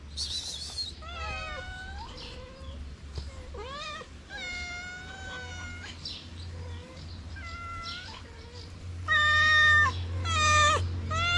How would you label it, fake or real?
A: real